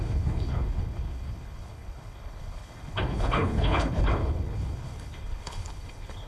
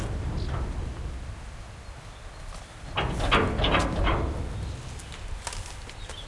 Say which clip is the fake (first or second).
first